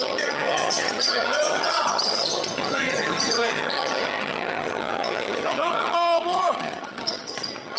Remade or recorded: remade